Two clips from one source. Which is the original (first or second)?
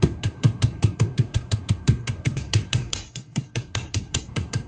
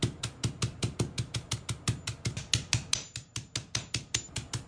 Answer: second